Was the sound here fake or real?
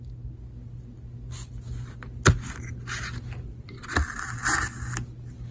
real